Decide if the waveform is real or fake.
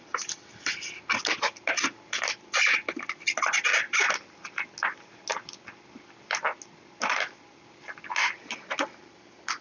real